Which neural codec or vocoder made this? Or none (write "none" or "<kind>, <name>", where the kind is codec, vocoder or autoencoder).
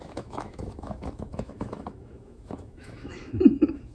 autoencoder, DAC-VAE